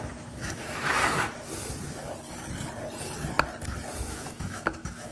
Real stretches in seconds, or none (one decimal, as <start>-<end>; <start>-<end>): 1.0-4.1